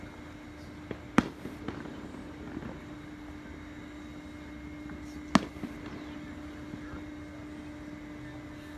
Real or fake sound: real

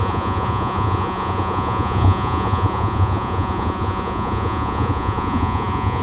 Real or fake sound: fake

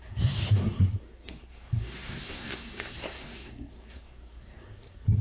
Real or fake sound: fake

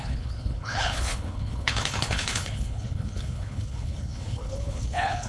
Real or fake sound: fake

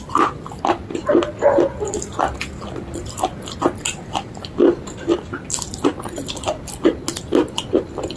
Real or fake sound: real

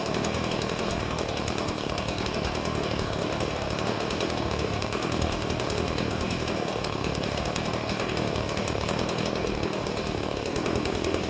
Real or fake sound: fake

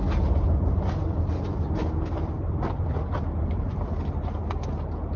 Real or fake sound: real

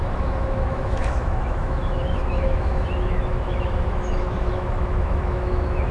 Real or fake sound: fake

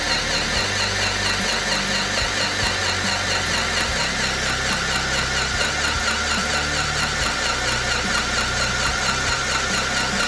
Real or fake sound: real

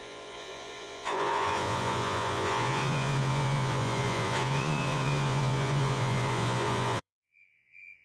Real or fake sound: fake